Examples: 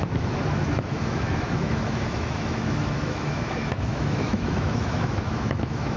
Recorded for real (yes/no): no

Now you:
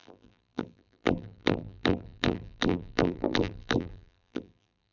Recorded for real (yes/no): no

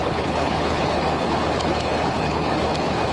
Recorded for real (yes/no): no